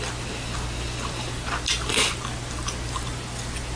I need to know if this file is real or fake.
real